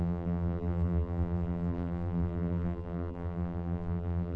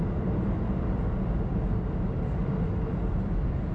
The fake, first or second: first